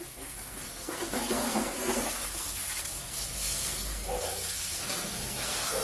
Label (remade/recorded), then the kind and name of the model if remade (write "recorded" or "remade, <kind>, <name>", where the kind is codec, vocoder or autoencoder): remade, codec, SNAC